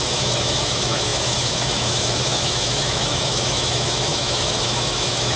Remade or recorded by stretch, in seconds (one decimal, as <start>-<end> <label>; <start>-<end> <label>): 0.0-5.4 remade